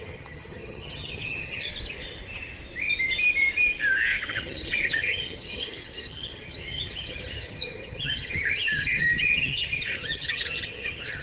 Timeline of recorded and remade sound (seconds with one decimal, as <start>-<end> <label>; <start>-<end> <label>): 0.0-1.7 remade; 1.7-4.3 recorded; 4.3-11.2 remade